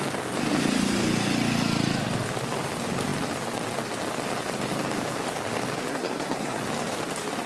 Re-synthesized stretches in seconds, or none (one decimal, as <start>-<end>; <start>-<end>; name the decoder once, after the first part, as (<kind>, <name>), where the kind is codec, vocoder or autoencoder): 5.9-6.6 (codec, SNAC)